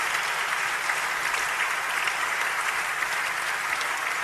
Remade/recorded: recorded